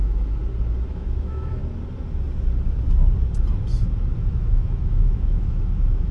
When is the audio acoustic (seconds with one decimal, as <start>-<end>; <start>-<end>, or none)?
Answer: 0.4-0.9; 1.6-4.3